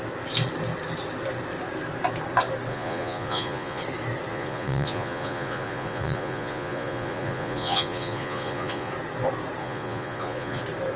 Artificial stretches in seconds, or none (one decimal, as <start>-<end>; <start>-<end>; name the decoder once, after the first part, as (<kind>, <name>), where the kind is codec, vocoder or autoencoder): 2.7-3.8 (vocoder, Vocos); 4.3-8.9; 9.6-10.6